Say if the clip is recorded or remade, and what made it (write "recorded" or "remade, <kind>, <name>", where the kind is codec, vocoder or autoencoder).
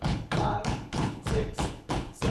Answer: remade, codec, HILCodec